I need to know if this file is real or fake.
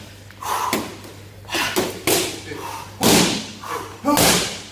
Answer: real